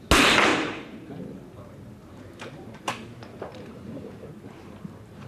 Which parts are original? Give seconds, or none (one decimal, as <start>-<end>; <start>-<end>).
0.0-0.5; 1.1-2.0